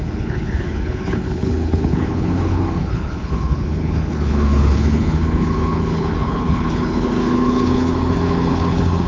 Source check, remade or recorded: remade